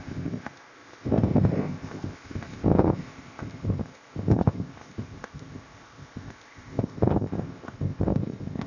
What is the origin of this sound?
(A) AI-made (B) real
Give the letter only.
A